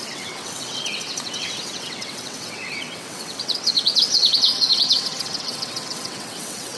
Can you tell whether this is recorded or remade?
remade